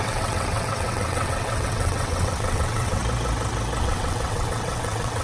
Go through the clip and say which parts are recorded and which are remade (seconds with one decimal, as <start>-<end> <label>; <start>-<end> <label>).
0.0-3.0 remade; 3.0-3.8 recorded; 3.8-5.2 remade

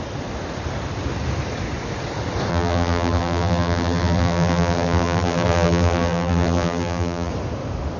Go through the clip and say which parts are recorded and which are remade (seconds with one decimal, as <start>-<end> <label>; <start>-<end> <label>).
0.0-2.5 recorded; 2.5-7.3 remade; 7.3-8.0 recorded

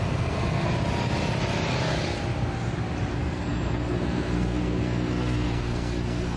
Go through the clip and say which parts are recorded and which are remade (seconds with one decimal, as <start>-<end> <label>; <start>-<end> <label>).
0.0-0.7 remade; 0.7-3.1 recorded; 3.1-6.4 remade

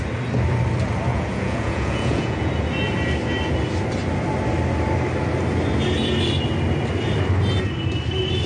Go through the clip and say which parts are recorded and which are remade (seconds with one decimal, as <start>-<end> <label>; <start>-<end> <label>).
0.0-1.1 recorded; 1.1-2.5 remade; 2.5-8.5 recorded

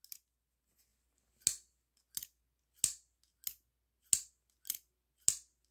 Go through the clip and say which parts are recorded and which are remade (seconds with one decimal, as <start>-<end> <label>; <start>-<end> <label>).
0.0-5.7 recorded

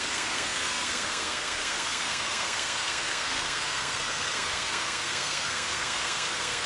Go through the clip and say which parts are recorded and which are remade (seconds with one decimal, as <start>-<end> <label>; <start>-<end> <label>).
0.0-6.7 remade

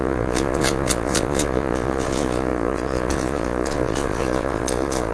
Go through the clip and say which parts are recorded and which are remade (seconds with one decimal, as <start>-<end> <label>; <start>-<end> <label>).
0.0-5.1 remade

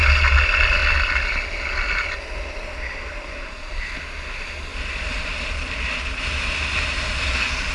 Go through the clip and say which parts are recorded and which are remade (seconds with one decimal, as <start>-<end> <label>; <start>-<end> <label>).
0.0-7.7 recorded